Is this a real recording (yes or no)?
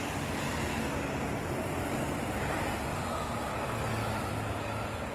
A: yes